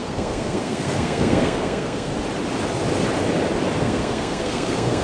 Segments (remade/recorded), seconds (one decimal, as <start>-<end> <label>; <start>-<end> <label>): 0.0-2.1 remade; 2.1-3.8 recorded; 3.8-5.0 remade